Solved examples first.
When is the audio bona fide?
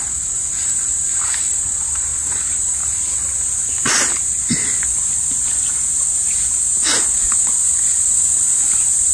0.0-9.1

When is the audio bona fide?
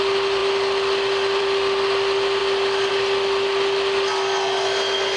0.0-5.2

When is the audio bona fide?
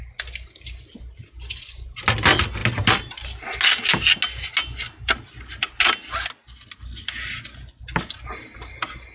0.0-9.1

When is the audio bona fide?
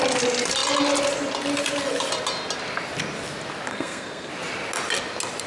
0.0-3.7; 4.3-5.5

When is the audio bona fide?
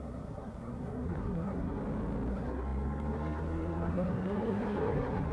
1.8-2.3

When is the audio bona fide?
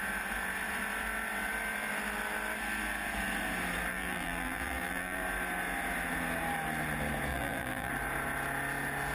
0.0-3.9; 5.2-7.3; 7.9-9.1